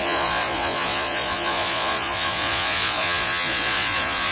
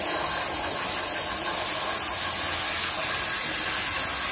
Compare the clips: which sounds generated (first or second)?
first